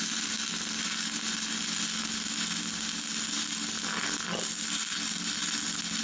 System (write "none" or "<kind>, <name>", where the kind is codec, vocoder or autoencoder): none